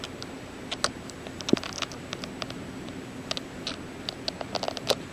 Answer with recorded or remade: recorded